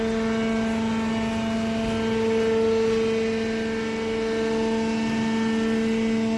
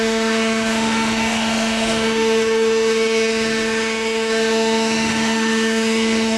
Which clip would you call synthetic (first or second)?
second